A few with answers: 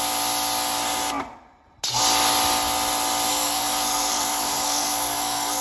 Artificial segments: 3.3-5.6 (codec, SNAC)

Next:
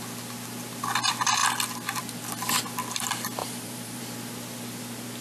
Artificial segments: 3.4-4.0 (vocoder, BigVGAN v2)

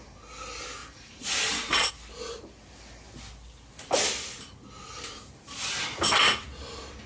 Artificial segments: 0.8-1.9 (vocoder, BigVGAN v2)

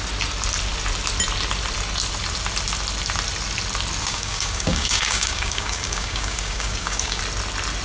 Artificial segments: 4.0-7.2 (codec, DAC)

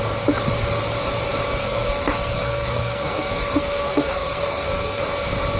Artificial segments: 1.6-5.0 (codec, SNAC)